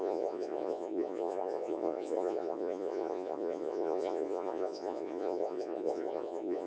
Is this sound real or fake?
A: fake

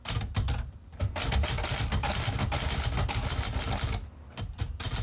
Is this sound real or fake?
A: real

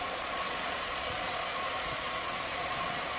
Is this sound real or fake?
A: fake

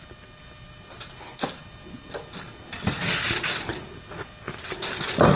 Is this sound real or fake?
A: real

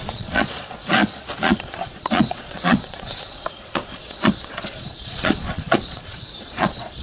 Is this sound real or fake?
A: fake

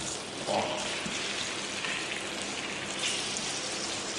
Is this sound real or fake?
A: real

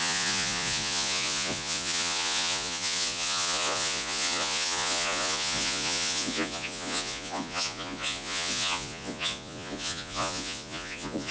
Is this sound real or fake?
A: fake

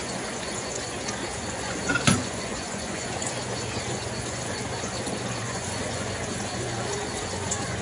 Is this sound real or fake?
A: fake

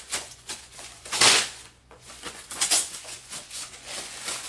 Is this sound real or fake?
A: fake